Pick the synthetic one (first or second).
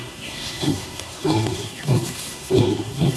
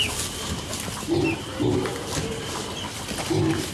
first